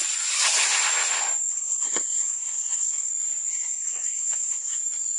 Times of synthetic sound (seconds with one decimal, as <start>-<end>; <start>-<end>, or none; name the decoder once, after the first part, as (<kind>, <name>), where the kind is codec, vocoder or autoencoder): 1.5-3.1 (codec, SNAC); 3.5-4.8